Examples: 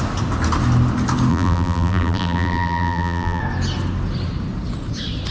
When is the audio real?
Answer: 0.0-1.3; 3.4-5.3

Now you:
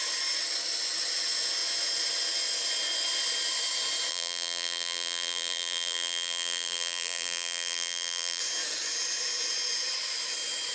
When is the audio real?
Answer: 0.0-4.1; 8.4-10.7

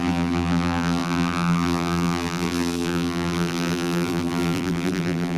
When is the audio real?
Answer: none

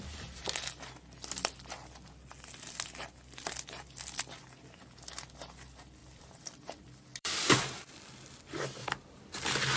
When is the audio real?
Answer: 0.0-6.0; 8.0-8.8

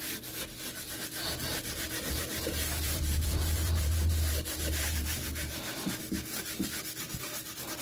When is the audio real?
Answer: 0.0-1.2; 5.8-7.8

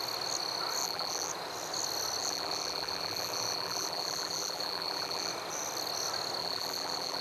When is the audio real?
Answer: 0.0-0.8; 1.3-2.2; 5.3-6.4

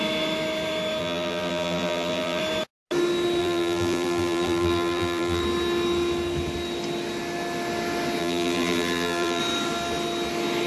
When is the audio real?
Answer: 0.0-1.0; 2.4-3.4; 5.4-8.2; 9.4-10.7

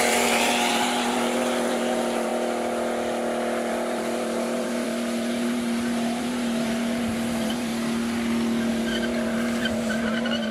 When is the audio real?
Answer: 2.3-3.7; 7.7-8.7